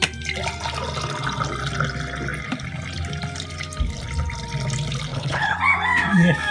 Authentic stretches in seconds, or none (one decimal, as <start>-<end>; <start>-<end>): 0.0-5.1; 5.6-6.5